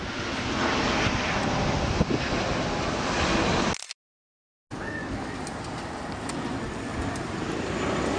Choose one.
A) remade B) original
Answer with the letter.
B